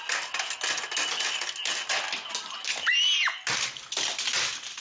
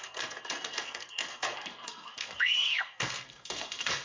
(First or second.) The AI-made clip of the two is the second